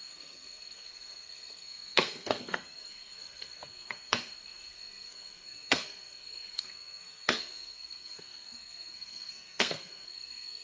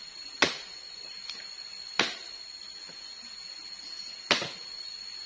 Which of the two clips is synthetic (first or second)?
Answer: first